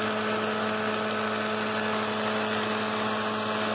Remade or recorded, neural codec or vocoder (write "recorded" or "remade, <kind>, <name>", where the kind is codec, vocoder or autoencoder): recorded